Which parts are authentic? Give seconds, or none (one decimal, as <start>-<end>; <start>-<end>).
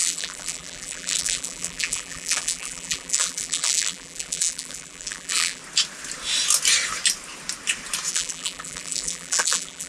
5.6-8.1